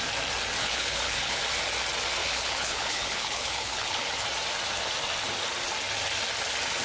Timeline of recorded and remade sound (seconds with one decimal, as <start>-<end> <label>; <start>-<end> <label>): 0.0-0.6 recorded; 0.6-1.4 remade; 1.4-2.2 recorded; 2.2-4.1 remade; 4.1-6.8 recorded